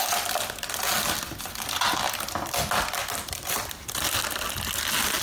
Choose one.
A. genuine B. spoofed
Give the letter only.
A